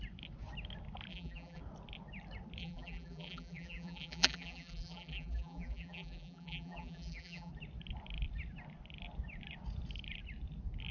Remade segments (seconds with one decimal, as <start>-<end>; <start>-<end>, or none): 1.1-1.6; 2.6-7.5

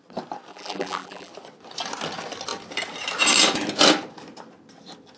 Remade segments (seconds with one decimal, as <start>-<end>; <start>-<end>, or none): 0.5-1.3

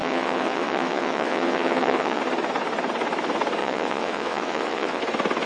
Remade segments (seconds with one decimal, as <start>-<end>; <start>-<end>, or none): 0.0-2.2; 3.6-5.0

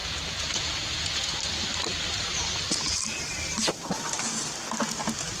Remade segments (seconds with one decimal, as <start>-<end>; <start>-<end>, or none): 0.0-1.4